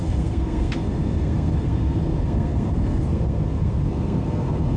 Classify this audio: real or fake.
fake